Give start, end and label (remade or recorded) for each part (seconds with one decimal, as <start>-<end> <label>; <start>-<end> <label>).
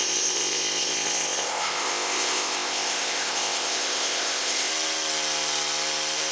0.0-4.7 remade; 4.7-6.3 recorded